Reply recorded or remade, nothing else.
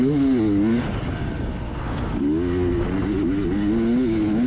recorded